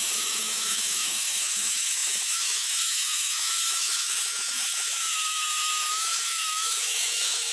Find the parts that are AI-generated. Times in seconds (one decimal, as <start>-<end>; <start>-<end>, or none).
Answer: 0.0-7.5